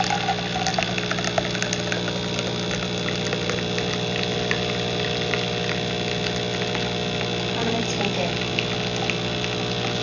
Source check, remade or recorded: recorded